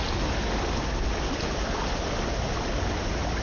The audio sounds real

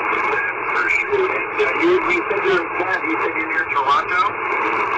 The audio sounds fake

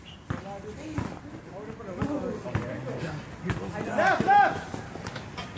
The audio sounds real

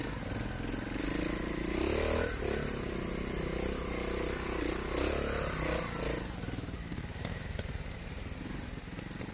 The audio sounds real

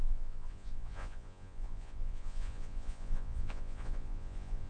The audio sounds fake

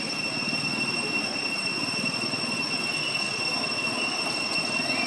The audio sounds real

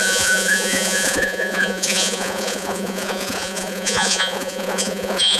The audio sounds fake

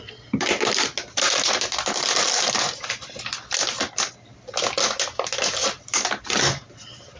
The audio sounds real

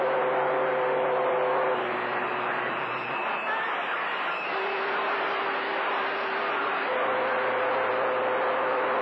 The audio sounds real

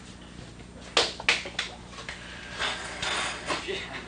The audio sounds real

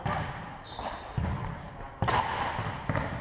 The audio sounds real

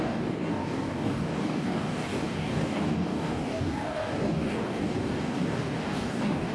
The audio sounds fake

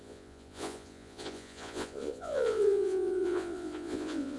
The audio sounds fake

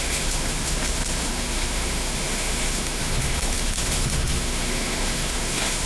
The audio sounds fake